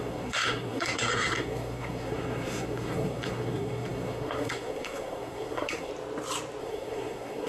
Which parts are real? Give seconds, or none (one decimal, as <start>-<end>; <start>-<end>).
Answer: 5.9-6.6